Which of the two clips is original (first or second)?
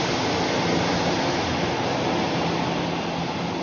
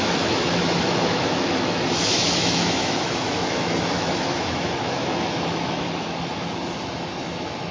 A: first